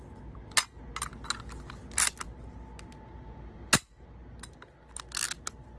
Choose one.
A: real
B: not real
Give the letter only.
A